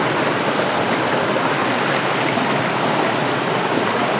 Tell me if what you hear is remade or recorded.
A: recorded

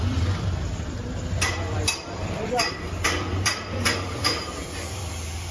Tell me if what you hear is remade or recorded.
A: remade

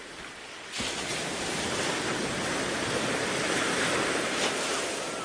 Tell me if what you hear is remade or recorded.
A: recorded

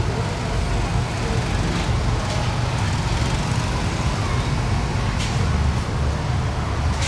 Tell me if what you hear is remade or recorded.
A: recorded